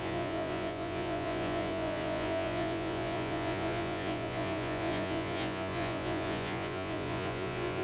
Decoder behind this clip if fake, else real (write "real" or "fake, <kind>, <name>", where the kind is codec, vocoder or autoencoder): fake, vocoder, Vocos